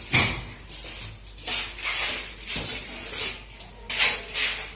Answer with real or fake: real